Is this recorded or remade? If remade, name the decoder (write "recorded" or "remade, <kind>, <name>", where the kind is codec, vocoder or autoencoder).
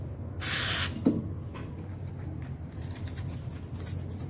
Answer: recorded